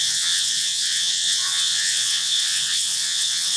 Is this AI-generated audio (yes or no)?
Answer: yes